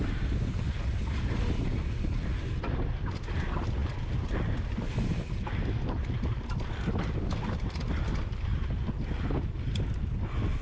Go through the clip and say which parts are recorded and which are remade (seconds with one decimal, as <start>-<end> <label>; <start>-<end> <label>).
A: 0.0-8.5 recorded; 8.5-9.3 remade; 9.3-10.6 recorded